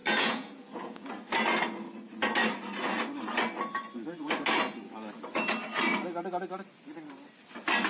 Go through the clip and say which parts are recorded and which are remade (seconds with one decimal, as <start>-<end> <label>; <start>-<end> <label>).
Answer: 0.0-1.1 remade; 1.1-7.9 recorded